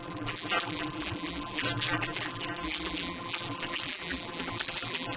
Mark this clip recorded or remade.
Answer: remade